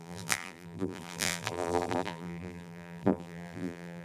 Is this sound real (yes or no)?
no